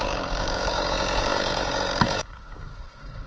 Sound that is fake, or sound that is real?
fake